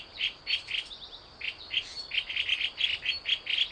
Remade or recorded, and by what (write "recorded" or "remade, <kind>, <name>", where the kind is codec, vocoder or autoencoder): recorded